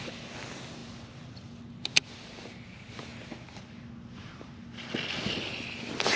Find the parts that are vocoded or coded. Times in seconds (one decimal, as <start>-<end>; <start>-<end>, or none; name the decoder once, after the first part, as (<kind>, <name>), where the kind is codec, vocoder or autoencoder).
none